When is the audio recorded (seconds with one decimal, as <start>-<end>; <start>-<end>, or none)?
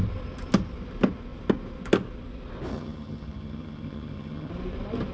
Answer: 0.0-2.7; 4.5-5.1